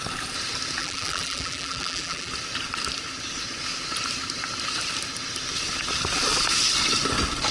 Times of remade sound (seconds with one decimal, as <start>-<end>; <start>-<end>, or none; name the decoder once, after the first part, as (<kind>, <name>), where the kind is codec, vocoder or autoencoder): 0.8-2.3 (vocoder, BigVGAN v2)